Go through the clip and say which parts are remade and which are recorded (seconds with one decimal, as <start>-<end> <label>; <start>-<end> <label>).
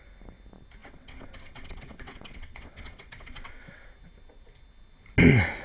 0.0-0.8 recorded; 0.8-3.8 remade; 3.8-5.6 recorded